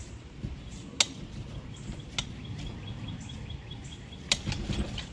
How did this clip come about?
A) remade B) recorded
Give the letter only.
B